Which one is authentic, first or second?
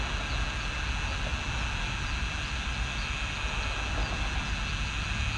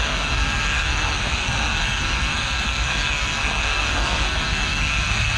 first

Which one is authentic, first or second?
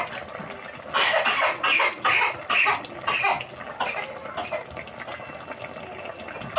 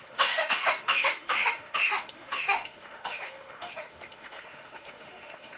first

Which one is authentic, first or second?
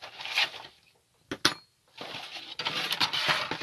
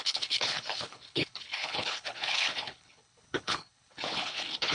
first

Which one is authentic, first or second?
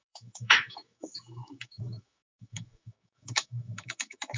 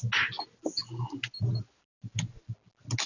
second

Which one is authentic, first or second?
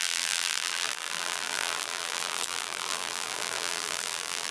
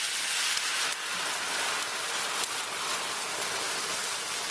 second